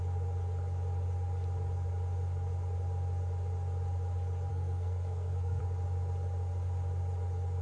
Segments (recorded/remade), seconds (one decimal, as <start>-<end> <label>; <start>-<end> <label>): 0.0-4.5 recorded; 4.5-5.6 remade; 5.6-7.6 recorded